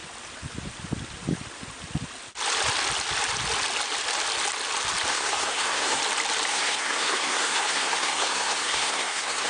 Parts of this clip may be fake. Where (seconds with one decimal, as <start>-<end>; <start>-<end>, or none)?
5.1-6.0; 6.5-9.5